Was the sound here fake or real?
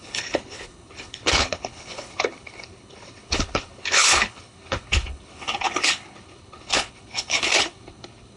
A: fake